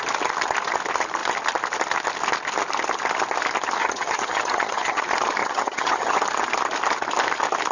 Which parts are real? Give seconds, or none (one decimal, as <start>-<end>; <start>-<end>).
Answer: 0.0-3.8; 5.0-5.4; 6.2-7.7